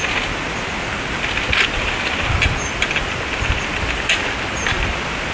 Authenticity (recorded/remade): recorded